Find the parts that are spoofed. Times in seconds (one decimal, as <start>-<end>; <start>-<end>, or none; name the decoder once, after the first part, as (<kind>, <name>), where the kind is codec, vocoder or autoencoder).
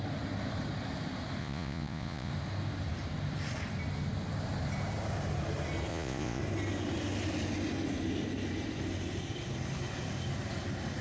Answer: 1.4-2.3 (vocoder, Vocos); 5.9-6.4